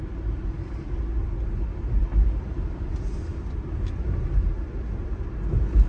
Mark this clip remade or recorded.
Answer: recorded